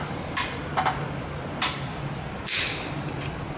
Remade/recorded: recorded